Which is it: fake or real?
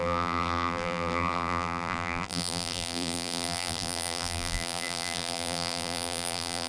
fake